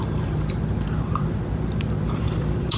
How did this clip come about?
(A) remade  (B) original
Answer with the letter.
A